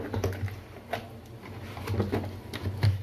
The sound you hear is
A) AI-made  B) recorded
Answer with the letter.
B